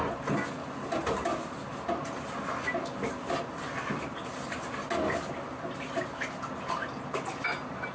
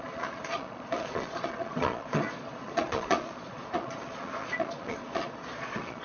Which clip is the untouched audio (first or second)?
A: first